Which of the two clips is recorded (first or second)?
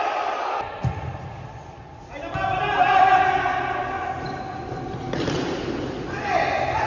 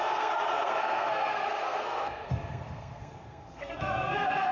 first